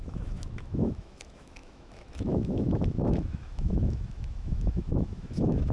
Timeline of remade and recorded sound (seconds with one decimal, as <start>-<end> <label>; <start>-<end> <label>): 0.0-5.7 remade